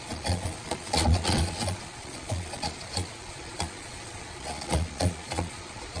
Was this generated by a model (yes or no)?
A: yes